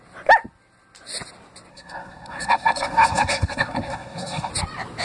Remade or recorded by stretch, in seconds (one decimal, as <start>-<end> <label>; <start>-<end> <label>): 0.0-1.7 recorded; 1.7-4.5 remade; 4.5-5.0 recorded

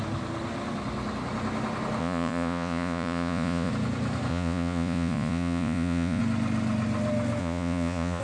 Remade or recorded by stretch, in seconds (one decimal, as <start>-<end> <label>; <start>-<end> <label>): 0.0-2.0 recorded; 2.0-3.7 remade; 3.7-4.3 recorded; 4.3-6.2 remade; 6.2-7.4 recorded; 7.4-8.2 remade

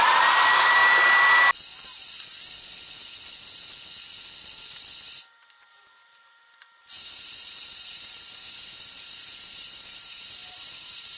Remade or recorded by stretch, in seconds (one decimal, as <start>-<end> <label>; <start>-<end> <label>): 0.0-0.8 remade; 0.8-5.7 recorded; 5.7-11.2 remade

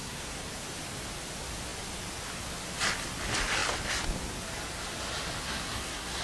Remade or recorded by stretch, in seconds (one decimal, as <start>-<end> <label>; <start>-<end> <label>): 0.0-0.5 remade; 0.5-5.4 recorded; 5.4-6.2 remade

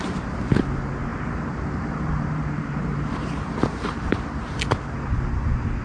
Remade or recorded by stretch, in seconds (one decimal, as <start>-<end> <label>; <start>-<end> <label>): 0.0-1.1 recorded; 1.1-4.6 remade; 4.6-5.8 recorded